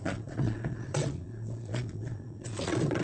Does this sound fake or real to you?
fake